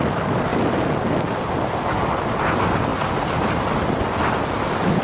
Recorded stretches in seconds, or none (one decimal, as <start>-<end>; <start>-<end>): 0.0-5.0